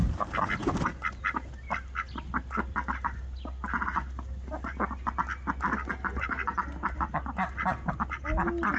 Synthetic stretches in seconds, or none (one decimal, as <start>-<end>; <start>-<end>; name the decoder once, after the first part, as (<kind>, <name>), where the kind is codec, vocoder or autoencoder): none